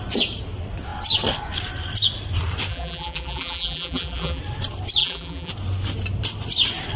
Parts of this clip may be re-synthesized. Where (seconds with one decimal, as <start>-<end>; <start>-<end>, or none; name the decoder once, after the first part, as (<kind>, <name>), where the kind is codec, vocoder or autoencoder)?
2.7-4.4 (vocoder, BigVGAN v2); 5.0-5.5